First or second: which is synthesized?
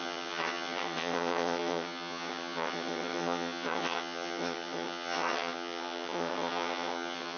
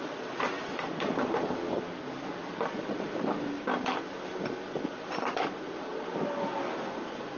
first